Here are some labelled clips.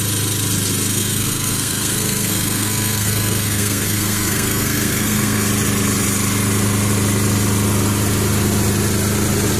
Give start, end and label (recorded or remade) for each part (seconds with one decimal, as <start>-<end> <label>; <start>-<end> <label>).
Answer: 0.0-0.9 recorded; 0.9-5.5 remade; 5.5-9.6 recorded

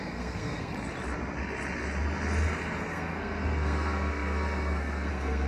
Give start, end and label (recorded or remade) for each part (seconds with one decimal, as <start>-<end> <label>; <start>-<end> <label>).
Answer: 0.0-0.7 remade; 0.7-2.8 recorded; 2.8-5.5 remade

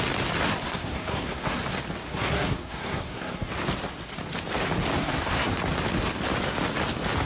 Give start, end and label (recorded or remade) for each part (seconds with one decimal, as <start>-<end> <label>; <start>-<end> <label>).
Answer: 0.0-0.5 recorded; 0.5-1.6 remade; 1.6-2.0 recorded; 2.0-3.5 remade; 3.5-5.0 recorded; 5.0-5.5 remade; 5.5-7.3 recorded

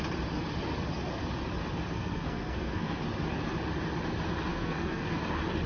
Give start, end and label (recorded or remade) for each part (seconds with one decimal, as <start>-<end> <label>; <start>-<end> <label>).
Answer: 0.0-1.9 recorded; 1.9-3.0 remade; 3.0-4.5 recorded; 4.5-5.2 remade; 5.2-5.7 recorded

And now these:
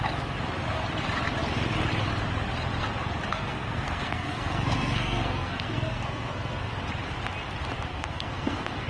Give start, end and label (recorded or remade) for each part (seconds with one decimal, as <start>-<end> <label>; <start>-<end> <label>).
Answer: 0.0-3.3 recorded; 3.3-6.7 remade; 6.7-7.9 recorded; 7.9-8.9 remade

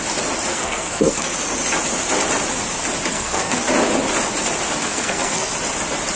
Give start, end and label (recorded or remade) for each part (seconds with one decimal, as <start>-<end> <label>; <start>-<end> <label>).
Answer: 0.0-0.5 recorded; 0.5-1.3 remade; 1.3-3.1 recorded; 3.1-3.6 remade; 3.6-4.8 recorded; 4.8-5.5 remade; 5.5-6.2 recorded